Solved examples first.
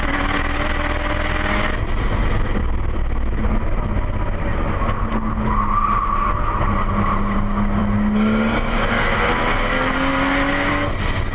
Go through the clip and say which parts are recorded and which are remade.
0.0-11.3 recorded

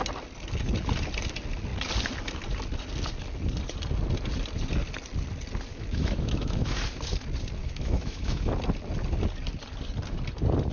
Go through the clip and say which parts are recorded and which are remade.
0.0-5.7 recorded; 5.7-6.8 remade; 6.8-7.6 recorded; 7.6-8.5 remade; 8.5-10.7 recorded

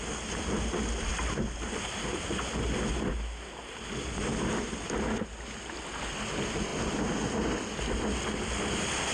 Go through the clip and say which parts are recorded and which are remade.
0.0-9.1 recorded

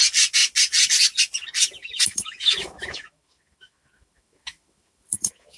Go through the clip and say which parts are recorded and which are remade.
0.0-1.8 recorded; 1.8-5.6 remade

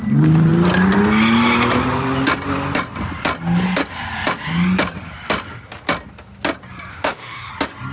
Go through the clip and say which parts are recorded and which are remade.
0.0-6.9 recorded; 6.9-7.5 remade; 7.5-7.9 recorded

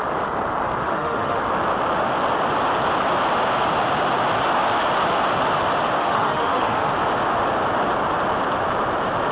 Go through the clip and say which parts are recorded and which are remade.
0.0-0.8 recorded; 0.8-1.4 remade; 1.4-6.0 recorded; 6.0-6.9 remade; 6.9-9.3 recorded

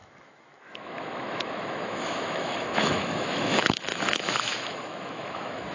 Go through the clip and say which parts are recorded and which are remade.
0.0-5.7 remade